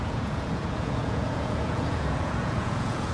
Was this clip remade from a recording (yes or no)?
yes